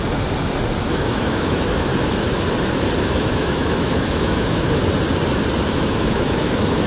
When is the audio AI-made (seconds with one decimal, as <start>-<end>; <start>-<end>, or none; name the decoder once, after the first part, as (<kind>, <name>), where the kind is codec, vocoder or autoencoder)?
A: 0.8-1.9 (autoencoder, DAC-VAE); 3.0-4.8; 5.7-6.9